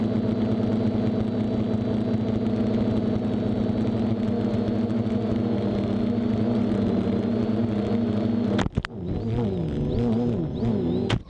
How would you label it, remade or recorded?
recorded